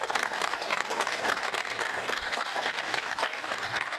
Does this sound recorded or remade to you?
remade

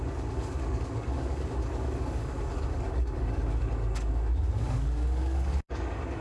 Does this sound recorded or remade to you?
remade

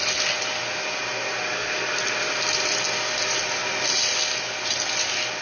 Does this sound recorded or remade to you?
recorded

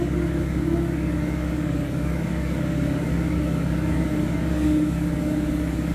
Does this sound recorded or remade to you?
remade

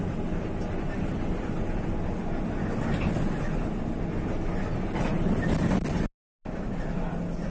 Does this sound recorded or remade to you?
recorded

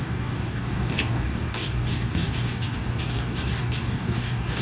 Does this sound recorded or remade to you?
remade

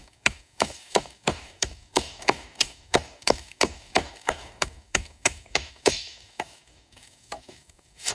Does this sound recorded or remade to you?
remade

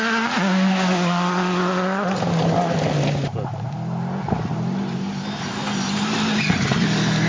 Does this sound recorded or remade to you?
recorded